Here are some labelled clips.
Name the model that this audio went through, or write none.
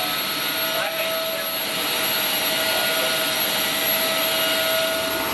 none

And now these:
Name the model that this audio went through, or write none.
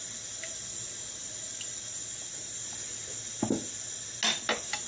none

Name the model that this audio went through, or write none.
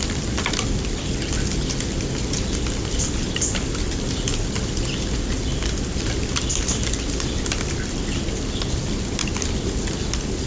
none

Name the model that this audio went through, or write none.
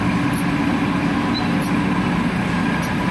none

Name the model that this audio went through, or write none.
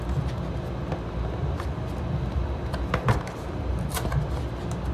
none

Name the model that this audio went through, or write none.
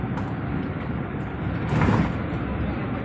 none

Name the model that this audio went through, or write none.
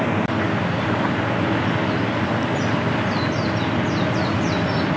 none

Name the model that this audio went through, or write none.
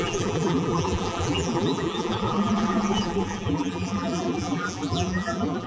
vocoder, BigVGAN v2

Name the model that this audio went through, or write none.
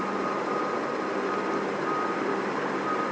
none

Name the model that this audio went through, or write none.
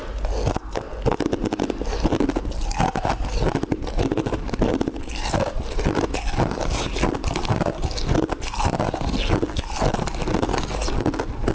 none